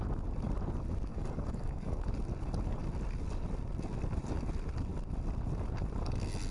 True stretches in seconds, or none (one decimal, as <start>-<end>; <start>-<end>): 0.0-1.1; 2.0-6.5